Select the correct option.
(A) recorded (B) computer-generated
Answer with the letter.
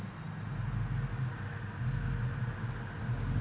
A